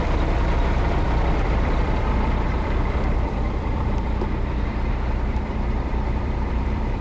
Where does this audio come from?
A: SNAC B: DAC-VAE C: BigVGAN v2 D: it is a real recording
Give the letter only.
C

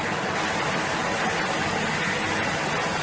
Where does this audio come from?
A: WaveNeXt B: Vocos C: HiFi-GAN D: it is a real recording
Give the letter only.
D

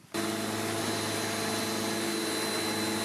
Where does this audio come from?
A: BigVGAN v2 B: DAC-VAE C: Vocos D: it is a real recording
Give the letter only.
D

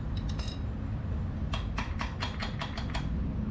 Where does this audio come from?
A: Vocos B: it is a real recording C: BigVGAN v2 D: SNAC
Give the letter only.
B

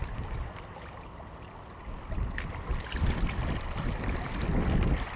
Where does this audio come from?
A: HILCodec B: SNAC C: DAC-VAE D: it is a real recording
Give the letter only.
D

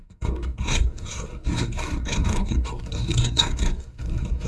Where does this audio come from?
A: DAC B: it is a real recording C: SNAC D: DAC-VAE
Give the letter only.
C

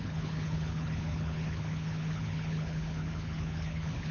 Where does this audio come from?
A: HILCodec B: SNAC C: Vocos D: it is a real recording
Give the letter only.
A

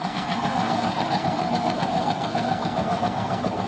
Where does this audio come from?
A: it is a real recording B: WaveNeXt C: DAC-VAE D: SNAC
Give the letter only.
D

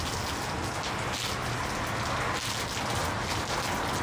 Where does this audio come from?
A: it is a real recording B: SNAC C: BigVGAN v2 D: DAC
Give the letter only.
A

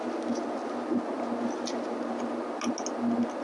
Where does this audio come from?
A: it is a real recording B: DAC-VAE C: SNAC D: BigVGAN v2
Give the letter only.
A